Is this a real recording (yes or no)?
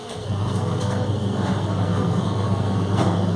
no